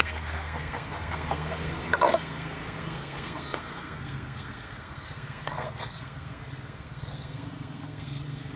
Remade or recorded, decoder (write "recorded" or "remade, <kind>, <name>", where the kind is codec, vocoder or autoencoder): remade, codec, SNAC